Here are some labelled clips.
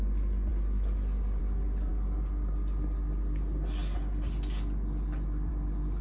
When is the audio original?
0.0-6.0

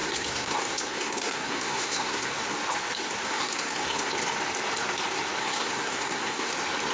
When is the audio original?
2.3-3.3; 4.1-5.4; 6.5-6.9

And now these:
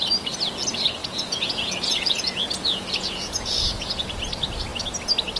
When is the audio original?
0.0-1.0; 4.2-5.4

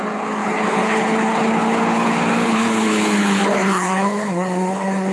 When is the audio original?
none

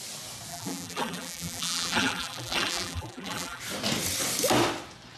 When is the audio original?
0.0-0.5; 3.6-5.2